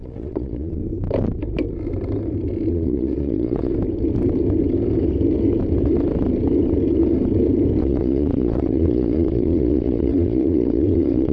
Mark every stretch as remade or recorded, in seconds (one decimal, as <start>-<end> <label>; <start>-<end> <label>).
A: 0.0-0.8 remade; 0.8-2.7 recorded; 2.7-3.7 remade; 3.7-7.8 recorded; 7.8-11.3 remade